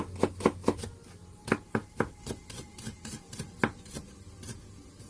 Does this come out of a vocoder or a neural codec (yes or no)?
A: no